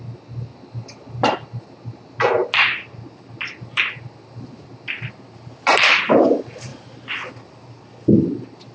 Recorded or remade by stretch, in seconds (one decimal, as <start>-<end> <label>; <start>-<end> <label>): 0.0-8.7 recorded